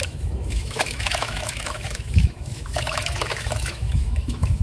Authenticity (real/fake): fake